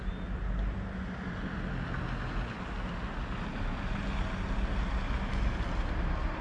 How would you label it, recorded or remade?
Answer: recorded